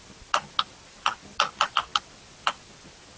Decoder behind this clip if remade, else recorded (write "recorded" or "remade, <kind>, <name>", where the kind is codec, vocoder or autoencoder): recorded